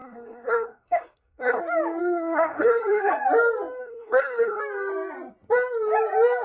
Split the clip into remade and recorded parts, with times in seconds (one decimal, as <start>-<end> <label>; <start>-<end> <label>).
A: 0.0-1.6 remade; 1.6-2.0 recorded; 2.0-3.1 remade; 3.1-3.8 recorded; 3.8-4.6 remade; 4.6-6.4 recorded